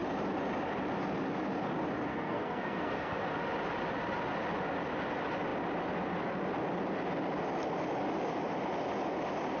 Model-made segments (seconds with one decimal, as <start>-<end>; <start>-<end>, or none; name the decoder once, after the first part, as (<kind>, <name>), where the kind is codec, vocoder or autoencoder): 2.1-3.2 (codec, SNAC)